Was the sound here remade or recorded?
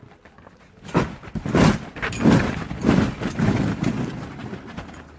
remade